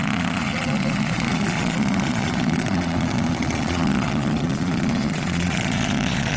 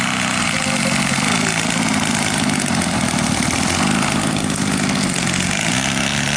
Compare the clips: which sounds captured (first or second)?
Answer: second